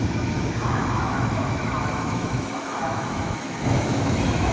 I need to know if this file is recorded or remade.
remade